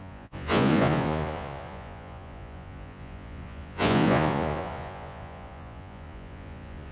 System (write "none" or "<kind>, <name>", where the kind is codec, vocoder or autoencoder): vocoder, Vocos